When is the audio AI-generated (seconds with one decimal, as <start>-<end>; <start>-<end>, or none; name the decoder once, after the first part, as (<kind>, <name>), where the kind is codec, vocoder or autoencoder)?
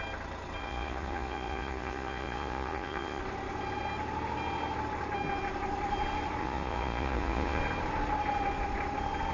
0.6-3.2 (vocoder, Vocos); 6.4-7.6